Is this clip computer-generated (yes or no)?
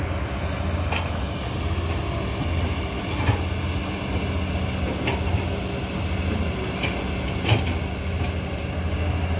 no